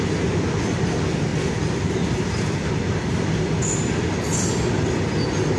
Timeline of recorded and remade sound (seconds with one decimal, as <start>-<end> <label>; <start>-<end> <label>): 0.0-5.6 recorded